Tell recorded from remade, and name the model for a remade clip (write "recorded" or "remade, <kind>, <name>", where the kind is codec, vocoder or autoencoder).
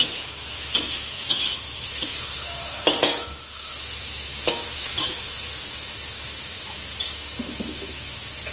remade, autoencoder, DAC-VAE